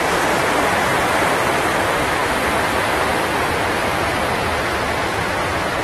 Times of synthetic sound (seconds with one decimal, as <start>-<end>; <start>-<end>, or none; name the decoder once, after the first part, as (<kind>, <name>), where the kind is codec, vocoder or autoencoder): 0.0-0.4 (vocoder, BigVGAN v2); 1.2-5.8